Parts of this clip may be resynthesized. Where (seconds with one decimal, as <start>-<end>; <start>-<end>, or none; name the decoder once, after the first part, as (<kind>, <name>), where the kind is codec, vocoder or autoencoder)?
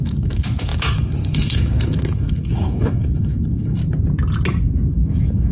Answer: 0.0-3.8 (autoencoder, DAC-VAE); 4.9-5.5